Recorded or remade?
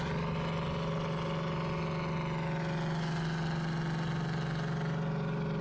recorded